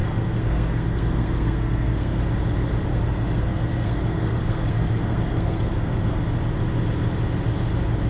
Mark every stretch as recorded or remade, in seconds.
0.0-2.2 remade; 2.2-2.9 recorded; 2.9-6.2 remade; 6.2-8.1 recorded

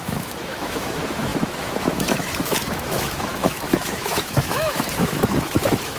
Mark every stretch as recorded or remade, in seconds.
0.0-6.0 remade

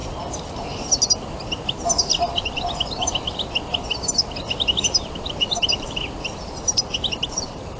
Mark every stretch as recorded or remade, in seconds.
0.0-2.4 recorded; 2.4-3.5 remade; 3.5-4.8 recorded; 4.8-6.2 remade; 6.2-7.1 recorded; 7.1-7.8 remade

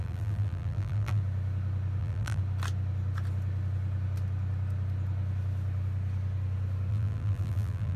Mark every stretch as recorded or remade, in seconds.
0.0-1.2 remade; 1.2-2.0 recorded; 2.0-2.4 remade; 2.4-6.9 recorded; 6.9-8.0 remade

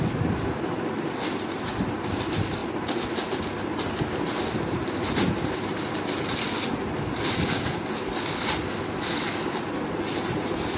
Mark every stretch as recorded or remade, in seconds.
0.0-10.8 recorded

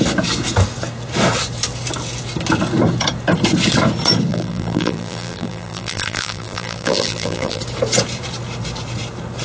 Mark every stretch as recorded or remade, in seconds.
0.0-4.3 recorded; 4.3-7.6 remade; 7.6-9.4 recorded

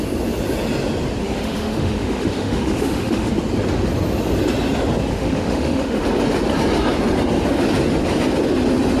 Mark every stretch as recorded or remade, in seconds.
0.0-1.2 recorded; 1.2-3.3 remade; 3.3-5.1 recorded; 5.1-6.0 remade; 6.0-9.0 recorded

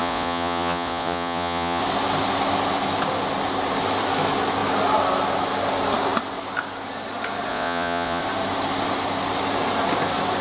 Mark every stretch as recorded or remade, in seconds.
0.0-1.8 remade; 1.8-7.5 recorded; 7.5-8.2 remade; 8.2-10.4 recorded